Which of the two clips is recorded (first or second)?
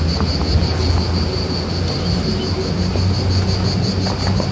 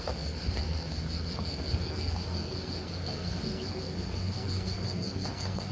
first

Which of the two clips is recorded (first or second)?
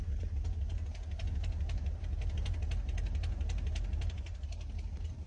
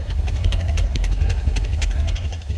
first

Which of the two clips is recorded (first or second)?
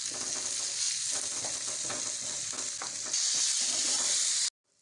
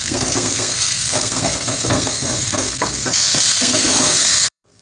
first